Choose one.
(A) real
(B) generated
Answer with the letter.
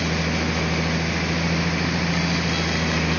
A